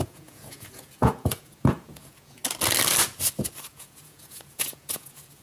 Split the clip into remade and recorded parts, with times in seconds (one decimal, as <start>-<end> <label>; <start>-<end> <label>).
0.0-2.4 remade; 2.4-3.7 recorded; 3.7-5.4 remade